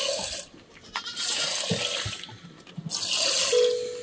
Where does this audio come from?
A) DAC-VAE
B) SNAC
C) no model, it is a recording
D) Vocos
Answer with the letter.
C